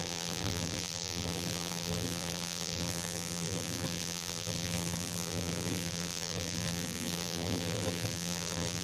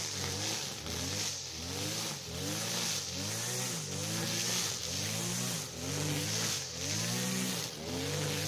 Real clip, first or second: second